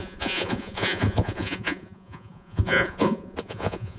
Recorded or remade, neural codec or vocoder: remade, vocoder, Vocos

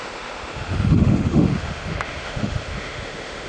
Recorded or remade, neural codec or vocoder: remade, autoencoder, DAC-VAE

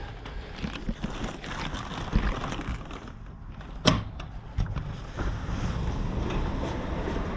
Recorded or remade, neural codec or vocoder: recorded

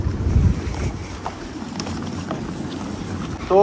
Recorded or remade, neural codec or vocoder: recorded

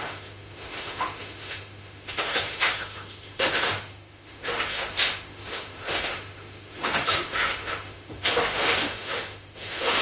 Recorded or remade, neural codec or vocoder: remade, autoencoder, DAC-VAE